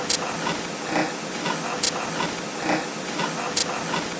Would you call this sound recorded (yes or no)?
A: yes